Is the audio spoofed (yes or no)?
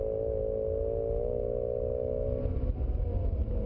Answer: no